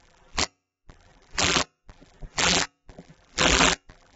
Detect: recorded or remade remade